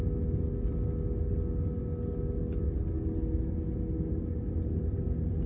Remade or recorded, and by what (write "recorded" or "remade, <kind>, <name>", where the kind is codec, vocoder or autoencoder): recorded